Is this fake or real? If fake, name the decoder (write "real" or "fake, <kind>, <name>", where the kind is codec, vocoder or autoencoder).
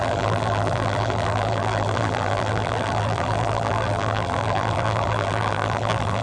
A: fake, vocoder, BigVGAN v2